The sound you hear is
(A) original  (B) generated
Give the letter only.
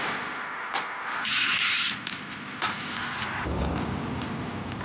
A